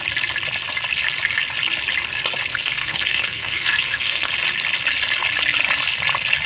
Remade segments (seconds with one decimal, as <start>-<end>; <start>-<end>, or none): 2.5-4.3